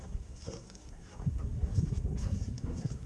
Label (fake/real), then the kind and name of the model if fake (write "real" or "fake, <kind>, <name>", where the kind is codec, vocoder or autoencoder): fake, codec, SNAC